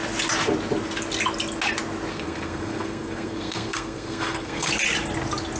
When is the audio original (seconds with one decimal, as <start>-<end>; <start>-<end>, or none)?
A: 0.0-2.1; 4.7-5.6